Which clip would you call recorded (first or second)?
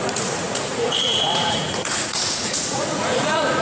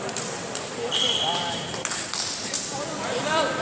second